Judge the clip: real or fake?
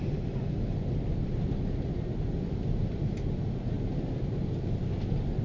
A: real